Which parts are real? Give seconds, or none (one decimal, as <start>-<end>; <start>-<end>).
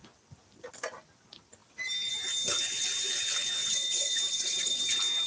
0.0-3.6; 4.8-5.3